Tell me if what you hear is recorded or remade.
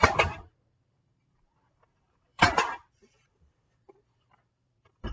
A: remade